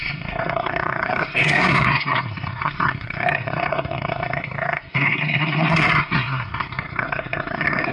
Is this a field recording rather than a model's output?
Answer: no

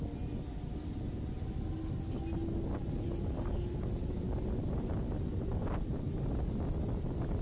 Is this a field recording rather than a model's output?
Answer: yes